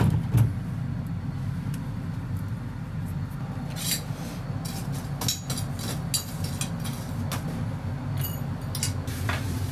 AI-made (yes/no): no